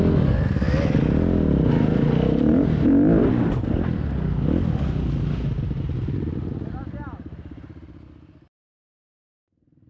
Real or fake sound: real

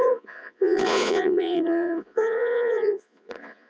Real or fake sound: fake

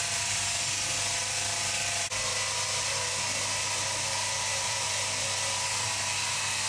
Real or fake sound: real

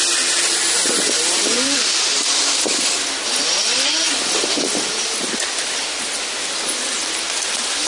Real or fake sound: real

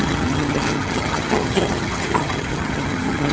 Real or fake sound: fake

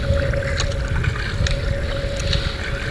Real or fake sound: real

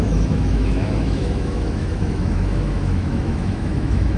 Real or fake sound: fake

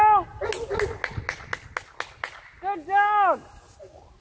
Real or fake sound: real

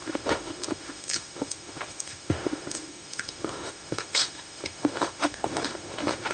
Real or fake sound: fake